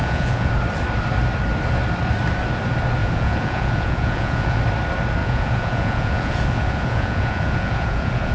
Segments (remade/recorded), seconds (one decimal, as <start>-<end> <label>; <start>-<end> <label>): 0.0-0.5 remade; 0.5-3.0 recorded; 3.0-4.6 remade; 4.6-5.2 recorded; 5.2-8.3 remade